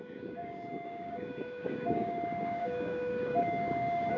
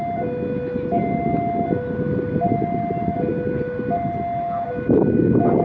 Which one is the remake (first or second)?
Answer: first